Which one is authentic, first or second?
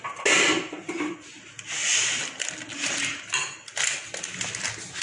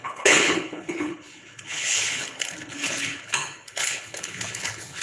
first